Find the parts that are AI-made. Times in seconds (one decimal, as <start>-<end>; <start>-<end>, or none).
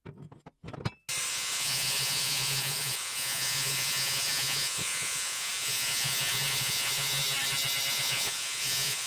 1.3-7.2; 7.9-9.1